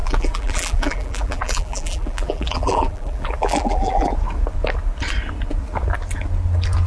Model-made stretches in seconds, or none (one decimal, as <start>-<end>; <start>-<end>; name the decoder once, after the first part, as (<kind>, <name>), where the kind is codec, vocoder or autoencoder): 0.0-4.1 (vocoder, BigVGAN v2)